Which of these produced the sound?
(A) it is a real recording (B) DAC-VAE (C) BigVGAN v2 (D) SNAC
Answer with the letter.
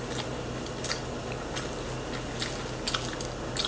A